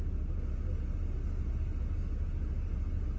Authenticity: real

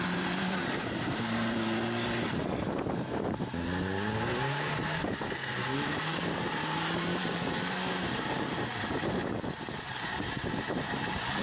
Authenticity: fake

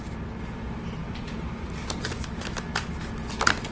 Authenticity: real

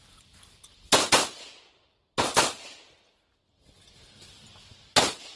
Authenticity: real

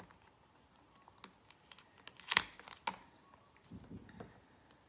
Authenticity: real